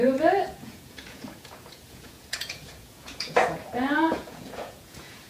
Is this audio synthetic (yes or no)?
yes